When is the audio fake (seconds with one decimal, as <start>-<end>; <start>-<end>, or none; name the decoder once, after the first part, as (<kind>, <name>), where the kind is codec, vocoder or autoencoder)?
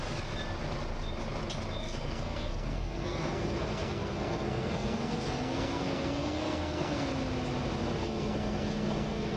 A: 1.8-7.1 (codec, SNAC); 8.0-9.4